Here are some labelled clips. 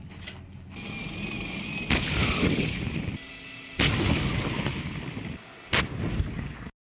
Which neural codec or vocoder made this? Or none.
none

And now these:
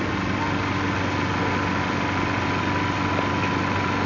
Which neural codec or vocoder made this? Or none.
none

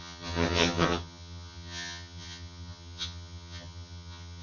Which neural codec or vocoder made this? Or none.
vocoder, HiFi-GAN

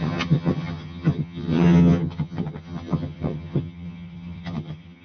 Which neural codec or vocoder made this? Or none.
vocoder, HiFi-GAN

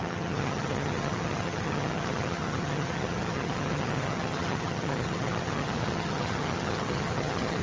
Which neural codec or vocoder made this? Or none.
vocoder, HiFi-GAN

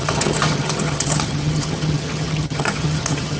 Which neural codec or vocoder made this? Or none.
vocoder, HiFi-GAN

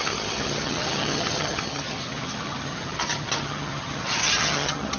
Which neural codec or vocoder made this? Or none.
vocoder, HiFi-GAN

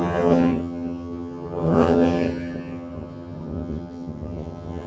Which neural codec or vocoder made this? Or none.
vocoder, HiFi-GAN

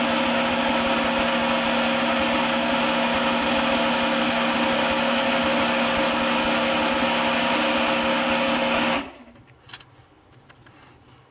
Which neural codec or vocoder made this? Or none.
none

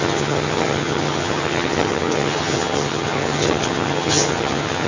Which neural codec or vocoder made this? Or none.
vocoder, HiFi-GAN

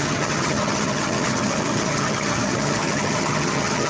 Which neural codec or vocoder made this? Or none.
vocoder, HiFi-GAN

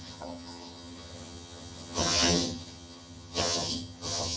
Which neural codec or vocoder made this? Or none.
vocoder, HiFi-GAN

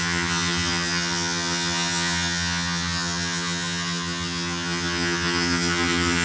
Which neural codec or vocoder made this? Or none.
vocoder, HiFi-GAN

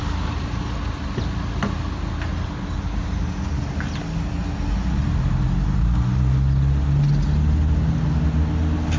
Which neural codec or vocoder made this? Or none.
none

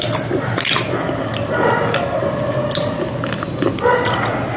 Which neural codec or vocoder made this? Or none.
none